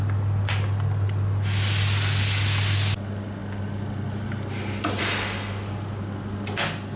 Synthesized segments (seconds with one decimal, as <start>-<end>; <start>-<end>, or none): none